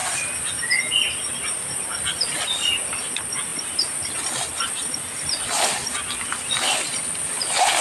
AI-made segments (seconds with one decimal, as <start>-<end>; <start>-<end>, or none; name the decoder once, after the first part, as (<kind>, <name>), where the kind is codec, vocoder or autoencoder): none